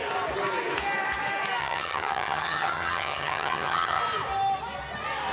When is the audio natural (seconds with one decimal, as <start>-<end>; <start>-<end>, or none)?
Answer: 0.0-1.6; 4.0-5.3